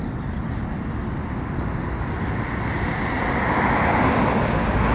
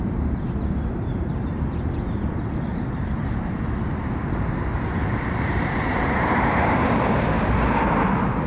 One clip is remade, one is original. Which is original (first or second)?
first